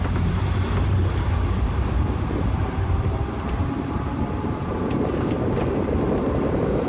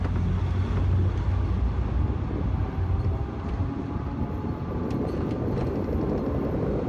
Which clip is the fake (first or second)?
first